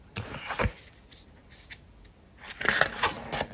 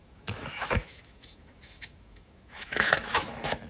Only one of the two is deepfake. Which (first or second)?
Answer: second